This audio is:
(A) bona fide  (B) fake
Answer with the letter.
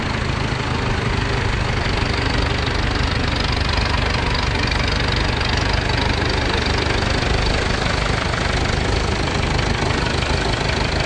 A